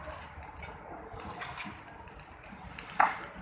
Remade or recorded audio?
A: recorded